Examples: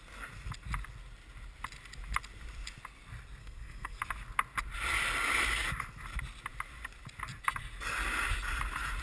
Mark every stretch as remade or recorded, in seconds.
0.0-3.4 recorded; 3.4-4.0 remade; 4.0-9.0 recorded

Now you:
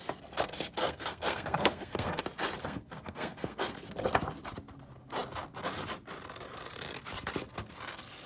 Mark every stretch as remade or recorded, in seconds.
0.0-0.8 recorded; 0.8-2.2 remade; 2.2-2.6 recorded; 2.6-3.7 remade; 3.7-8.3 recorded

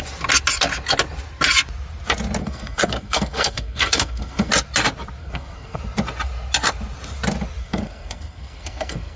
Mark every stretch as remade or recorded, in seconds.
0.0-2.4 recorded; 2.4-4.5 remade; 4.5-5.2 recorded; 5.2-5.8 remade; 5.8-7.6 recorded; 7.6-9.2 remade

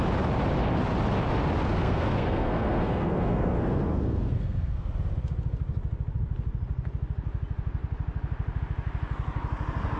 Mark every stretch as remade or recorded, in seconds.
0.0-1.7 recorded; 1.7-4.9 remade; 4.9-10.0 recorded